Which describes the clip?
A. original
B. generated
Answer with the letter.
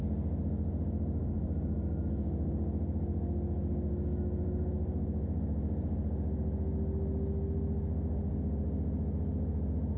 A